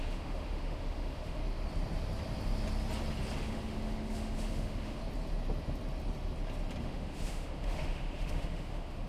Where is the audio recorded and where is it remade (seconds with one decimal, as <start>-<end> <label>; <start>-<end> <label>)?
0.0-1.4 remade; 1.4-3.4 recorded; 3.4-5.0 remade; 5.0-6.8 recorded; 6.8-9.1 remade